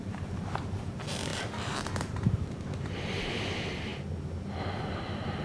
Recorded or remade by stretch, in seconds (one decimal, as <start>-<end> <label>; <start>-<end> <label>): 0.0-3.9 remade; 3.9-4.6 recorded; 4.6-5.4 remade